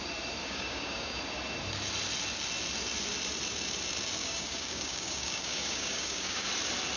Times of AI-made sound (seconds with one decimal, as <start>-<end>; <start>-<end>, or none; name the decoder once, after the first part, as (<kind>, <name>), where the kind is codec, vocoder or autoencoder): 0.4-1.2 (codec, DAC); 4.2-6.5